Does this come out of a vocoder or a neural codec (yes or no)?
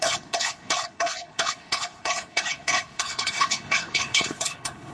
yes